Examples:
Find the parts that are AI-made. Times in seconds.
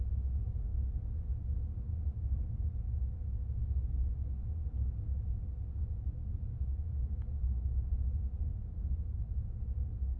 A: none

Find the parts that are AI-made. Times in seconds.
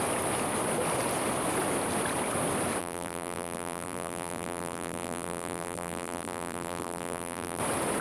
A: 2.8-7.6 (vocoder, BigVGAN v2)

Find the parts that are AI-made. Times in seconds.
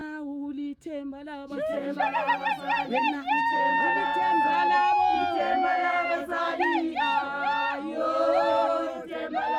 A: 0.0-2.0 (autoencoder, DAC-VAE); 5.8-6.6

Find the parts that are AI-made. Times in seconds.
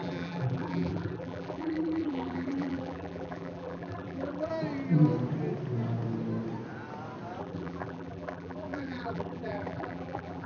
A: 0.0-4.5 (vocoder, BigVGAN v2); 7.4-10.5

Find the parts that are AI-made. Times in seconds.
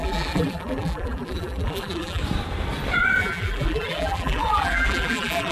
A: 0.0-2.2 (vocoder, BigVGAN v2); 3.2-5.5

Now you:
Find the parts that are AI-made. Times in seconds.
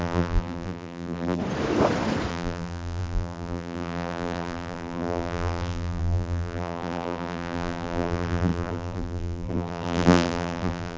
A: 0.0-1.4 (vocoder, BigVGAN v2); 2.3-11.0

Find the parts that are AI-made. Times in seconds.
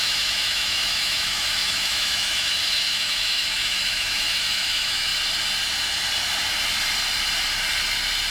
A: 0.0-5.1 (autoencoder, DAC-VAE)